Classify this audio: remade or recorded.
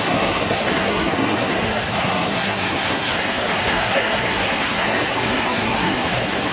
remade